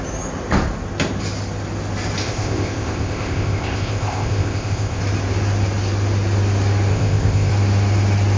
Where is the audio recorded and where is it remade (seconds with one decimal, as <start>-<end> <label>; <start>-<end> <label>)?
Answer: 0.0-2.2 recorded; 2.2-5.0 remade; 5.0-6.9 recorded; 6.9-7.5 remade; 7.5-8.4 recorded